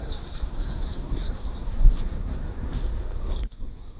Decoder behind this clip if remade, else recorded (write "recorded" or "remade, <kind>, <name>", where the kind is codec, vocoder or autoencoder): remade, codec, SNAC